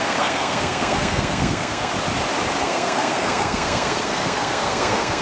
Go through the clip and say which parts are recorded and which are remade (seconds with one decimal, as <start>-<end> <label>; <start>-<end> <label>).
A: 0.0-1.9 remade; 1.9-2.6 recorded; 2.6-5.2 remade